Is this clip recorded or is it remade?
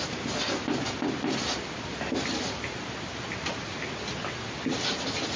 recorded